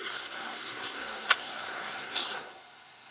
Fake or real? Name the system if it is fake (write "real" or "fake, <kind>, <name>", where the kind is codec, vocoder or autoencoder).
fake, codec, SNAC